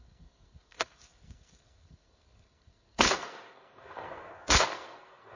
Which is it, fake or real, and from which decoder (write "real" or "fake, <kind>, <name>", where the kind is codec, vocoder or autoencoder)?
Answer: fake, codec, SNAC